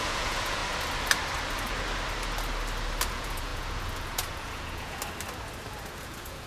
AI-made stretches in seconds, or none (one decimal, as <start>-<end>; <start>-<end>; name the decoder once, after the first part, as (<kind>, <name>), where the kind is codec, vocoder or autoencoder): 0.0-0.6 (vocoder, Vocos); 3.1-5.0; 5.8-6.5